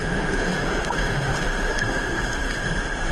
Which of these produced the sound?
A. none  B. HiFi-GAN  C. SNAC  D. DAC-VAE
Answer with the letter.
D